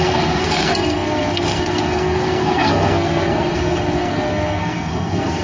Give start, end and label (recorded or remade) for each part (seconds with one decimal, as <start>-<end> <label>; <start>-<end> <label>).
0.0-5.4 remade